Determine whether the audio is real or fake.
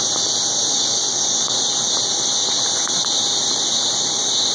real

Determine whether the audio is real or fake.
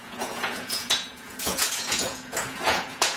fake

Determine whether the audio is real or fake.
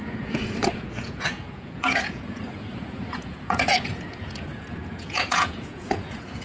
fake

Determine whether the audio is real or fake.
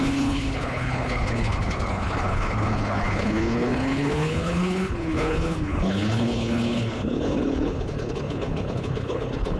fake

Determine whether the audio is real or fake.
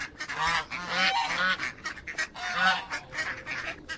real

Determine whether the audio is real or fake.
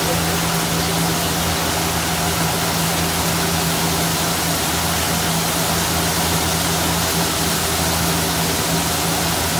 real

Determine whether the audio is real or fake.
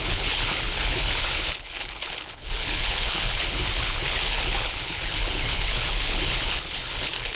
fake